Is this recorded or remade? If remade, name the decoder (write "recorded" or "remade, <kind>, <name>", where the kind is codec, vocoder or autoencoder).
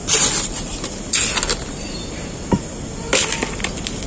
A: recorded